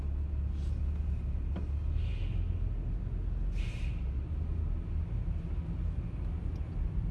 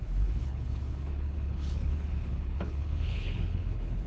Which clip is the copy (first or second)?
second